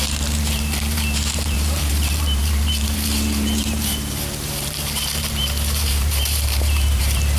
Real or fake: fake